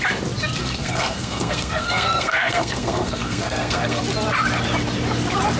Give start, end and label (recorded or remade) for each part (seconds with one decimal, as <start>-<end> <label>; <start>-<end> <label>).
0.0-0.6 recorded; 0.6-4.0 remade; 4.0-5.6 recorded